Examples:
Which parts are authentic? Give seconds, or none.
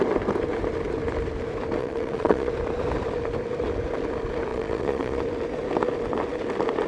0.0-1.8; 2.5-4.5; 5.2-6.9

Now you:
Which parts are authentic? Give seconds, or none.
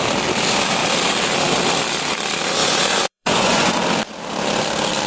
0.0-2.6; 3.7-5.1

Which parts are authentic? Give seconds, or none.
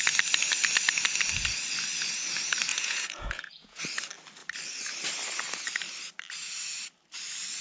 0.0-2.7; 3.8-7.6